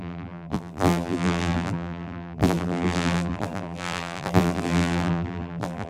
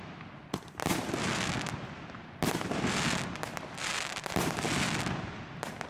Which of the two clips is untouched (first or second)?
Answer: second